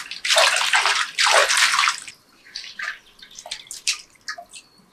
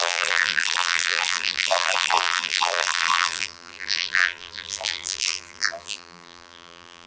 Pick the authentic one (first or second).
first